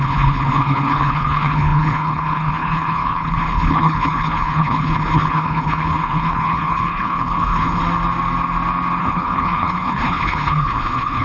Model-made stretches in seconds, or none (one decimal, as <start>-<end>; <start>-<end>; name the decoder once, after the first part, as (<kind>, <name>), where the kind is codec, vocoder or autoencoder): 0.0-7.8 (codec, HILCodec); 9.0-11.2